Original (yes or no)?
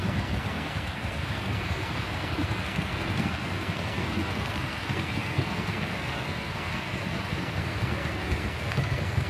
no